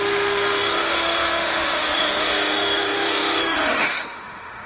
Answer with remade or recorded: remade